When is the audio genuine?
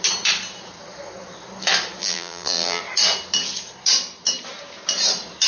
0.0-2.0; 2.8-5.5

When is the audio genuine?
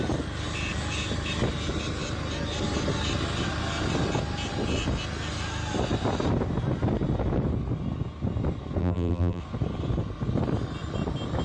0.0-8.8; 9.4-11.4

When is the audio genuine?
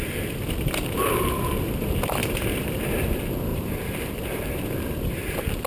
0.0-3.5; 4.6-5.7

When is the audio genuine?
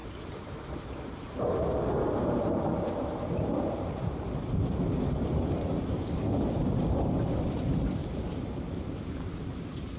4.1-5.8; 6.8-8.0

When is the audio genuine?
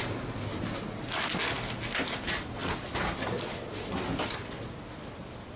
0.0-5.6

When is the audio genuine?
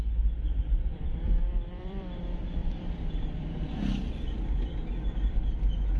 0.0-0.6; 2.2-2.6; 4.1-6.0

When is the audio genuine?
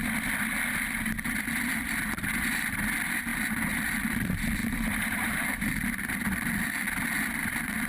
0.0-4.6; 5.6-7.9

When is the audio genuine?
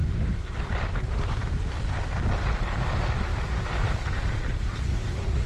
0.7-1.4; 2.2-3.3